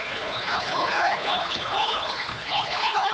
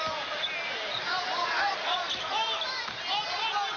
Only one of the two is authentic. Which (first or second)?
second